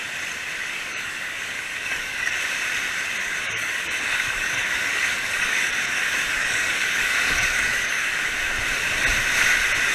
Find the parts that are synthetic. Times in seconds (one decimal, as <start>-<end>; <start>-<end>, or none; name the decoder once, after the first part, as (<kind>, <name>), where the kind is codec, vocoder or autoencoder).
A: 0.6-2.4 (codec, DAC); 3.2-8.2